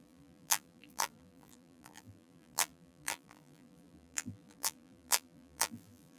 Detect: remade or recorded remade